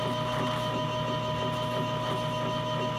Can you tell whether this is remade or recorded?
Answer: recorded